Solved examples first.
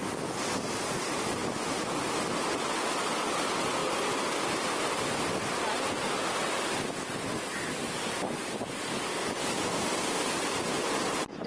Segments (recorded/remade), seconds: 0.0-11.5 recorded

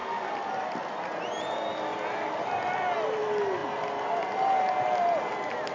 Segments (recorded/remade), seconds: 0.0-5.7 recorded

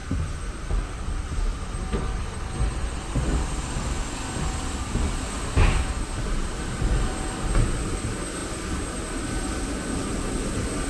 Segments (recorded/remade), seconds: 0.0-10.9 recorded

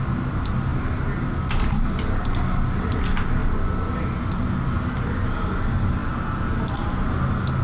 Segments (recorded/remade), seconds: 0.0-7.6 recorded

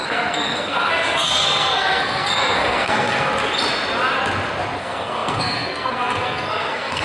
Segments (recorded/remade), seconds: 0.0-3.3 remade; 3.3-4.8 recorded; 4.8-7.0 remade

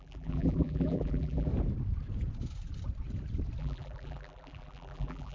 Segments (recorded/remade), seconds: 0.0-1.5 remade; 1.5-3.6 recorded; 3.6-5.3 remade

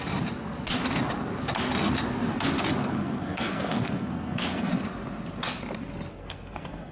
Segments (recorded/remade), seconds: 0.0-2.8 recorded; 2.8-4.7 remade; 4.7-6.1 recorded; 6.1-6.9 remade